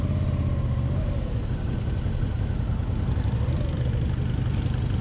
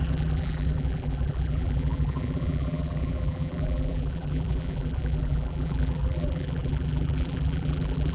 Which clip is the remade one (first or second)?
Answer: second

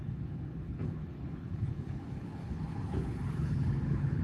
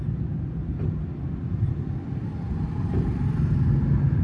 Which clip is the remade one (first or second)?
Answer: first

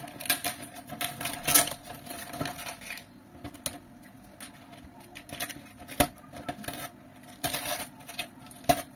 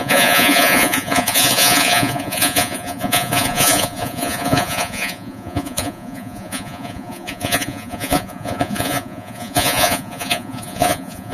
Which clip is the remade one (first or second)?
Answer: second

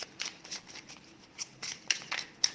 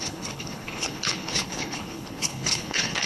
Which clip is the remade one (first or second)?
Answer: second